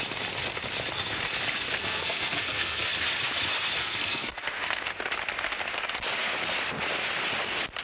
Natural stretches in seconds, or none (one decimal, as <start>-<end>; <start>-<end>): 0.0-1.8; 2.9-3.8; 4.8-7.8